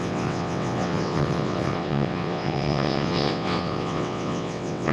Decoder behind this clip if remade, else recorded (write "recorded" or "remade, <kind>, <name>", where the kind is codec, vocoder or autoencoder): remade, vocoder, WaveNeXt